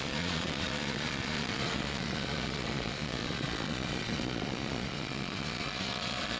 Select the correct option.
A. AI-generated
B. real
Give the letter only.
A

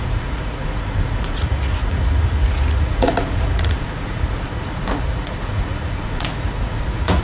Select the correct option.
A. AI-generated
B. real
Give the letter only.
A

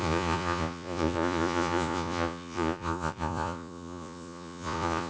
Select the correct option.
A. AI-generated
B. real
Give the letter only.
A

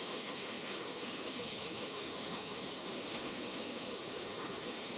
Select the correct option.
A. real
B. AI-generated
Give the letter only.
B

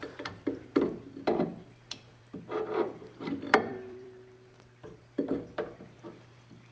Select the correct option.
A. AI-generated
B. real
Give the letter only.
A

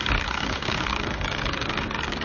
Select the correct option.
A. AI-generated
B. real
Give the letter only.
A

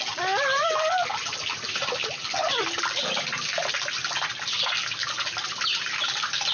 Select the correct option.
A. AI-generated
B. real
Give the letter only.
B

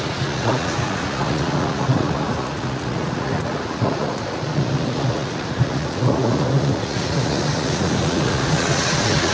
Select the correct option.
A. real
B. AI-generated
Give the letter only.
B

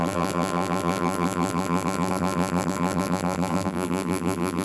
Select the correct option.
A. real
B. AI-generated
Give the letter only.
B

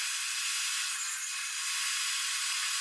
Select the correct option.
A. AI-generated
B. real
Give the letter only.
B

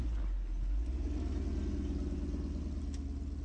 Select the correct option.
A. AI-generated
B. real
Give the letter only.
B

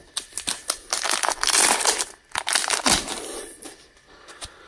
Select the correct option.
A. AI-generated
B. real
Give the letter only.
B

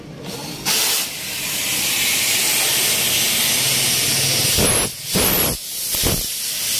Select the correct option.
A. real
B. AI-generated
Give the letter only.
A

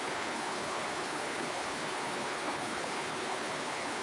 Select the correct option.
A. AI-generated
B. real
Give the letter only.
A